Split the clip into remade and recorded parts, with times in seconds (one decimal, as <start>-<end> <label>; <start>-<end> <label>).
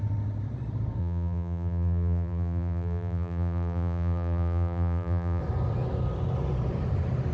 0.0-1.0 recorded; 1.0-5.4 remade; 5.4-7.3 recorded